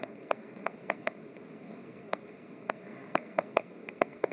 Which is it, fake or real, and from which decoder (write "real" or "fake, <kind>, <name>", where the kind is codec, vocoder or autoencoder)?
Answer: fake, codec, SNAC